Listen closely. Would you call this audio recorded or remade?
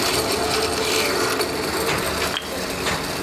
recorded